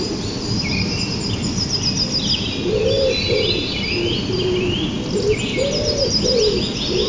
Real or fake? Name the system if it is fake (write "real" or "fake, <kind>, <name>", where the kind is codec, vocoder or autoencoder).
real